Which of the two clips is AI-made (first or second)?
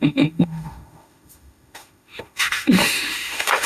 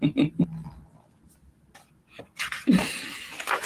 first